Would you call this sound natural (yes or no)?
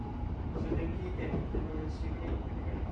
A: no